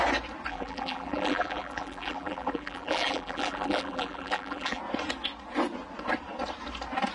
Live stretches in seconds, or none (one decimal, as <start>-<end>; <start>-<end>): 0.0-0.5; 4.8-7.1